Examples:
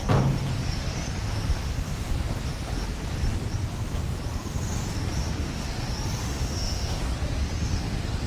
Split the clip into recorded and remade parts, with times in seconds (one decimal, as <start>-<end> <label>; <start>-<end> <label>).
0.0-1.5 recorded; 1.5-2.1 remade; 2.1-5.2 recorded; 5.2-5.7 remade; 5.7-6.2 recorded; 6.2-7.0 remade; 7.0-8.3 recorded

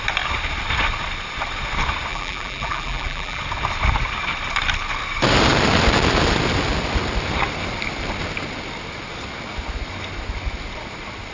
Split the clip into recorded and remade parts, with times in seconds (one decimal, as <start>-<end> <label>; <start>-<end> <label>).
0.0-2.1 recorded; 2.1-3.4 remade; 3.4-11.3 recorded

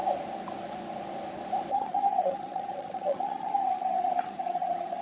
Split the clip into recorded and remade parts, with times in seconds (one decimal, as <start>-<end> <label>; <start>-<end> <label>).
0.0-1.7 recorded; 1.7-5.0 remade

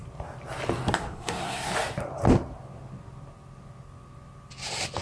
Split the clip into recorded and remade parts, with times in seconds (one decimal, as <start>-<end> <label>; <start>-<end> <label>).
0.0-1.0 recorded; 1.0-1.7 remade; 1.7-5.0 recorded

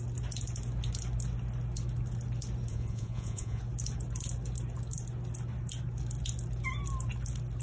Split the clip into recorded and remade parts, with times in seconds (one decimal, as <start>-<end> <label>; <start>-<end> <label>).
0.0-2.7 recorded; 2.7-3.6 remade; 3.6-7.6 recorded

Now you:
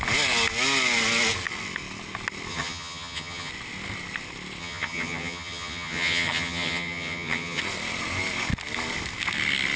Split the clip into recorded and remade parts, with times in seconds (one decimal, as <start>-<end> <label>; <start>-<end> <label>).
0.0-2.5 recorded; 2.5-3.5 remade; 3.5-4.6 recorded; 4.6-7.6 remade; 7.6-9.8 recorded